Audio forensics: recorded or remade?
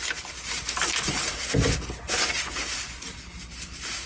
recorded